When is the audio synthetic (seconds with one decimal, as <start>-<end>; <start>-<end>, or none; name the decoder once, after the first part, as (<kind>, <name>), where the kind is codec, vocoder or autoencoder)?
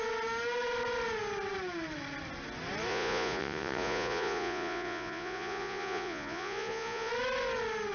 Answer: 2.9-7.1 (vocoder, Vocos)